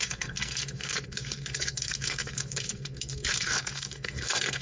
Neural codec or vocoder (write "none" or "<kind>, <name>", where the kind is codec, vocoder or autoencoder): codec, SNAC